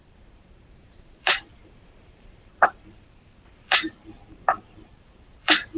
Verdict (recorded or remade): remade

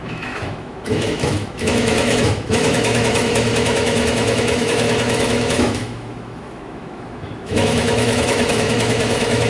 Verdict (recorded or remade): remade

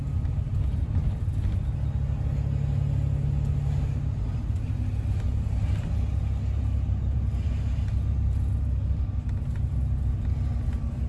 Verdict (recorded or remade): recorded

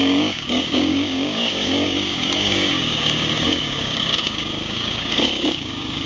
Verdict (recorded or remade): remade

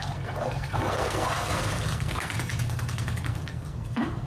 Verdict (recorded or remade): remade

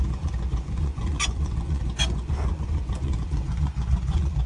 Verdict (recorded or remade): remade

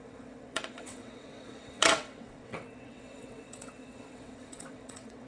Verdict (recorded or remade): remade